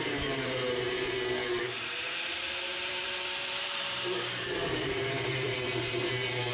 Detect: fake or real fake